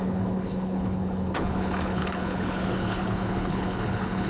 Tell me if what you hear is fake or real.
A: fake